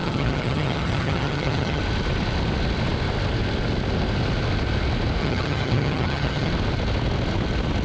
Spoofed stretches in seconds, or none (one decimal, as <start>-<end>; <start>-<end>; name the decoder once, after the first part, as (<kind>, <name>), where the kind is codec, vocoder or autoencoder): 0.0-1.8 (vocoder, HiFi-GAN); 5.2-6.5